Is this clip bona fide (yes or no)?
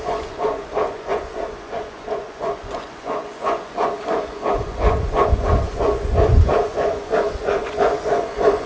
no